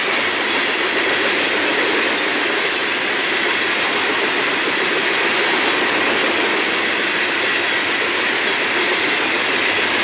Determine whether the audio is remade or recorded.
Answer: recorded